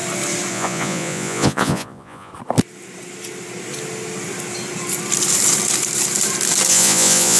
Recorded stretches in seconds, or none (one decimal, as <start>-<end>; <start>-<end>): 0.0-0.5; 2.3-6.7